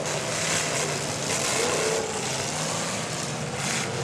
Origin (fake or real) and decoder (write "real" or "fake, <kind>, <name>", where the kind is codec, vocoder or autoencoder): real